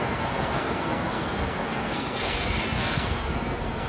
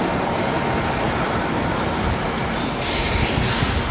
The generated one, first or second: first